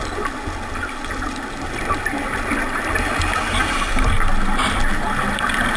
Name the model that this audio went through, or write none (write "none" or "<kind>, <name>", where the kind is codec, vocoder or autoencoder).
none